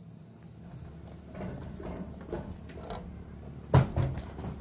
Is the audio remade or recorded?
recorded